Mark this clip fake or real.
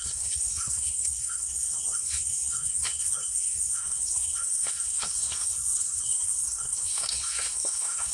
fake